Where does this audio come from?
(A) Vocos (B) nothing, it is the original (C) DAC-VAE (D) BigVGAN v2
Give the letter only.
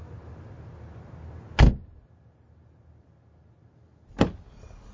B